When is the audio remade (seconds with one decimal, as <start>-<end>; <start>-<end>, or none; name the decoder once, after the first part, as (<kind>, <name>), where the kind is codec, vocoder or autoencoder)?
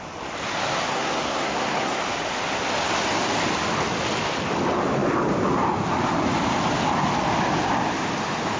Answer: 0.9-2.0 (codec, SNAC)